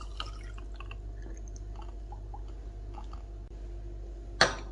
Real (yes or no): yes